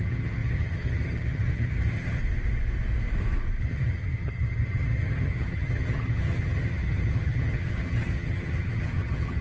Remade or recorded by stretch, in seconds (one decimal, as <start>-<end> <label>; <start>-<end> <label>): 0.0-2.2 remade; 2.2-3.6 recorded; 3.6-9.4 remade